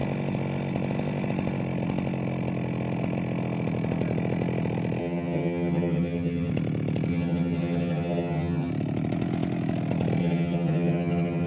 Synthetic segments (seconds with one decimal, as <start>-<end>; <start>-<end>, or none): 5.0-6.5; 7.1-8.7; 10.2-11.5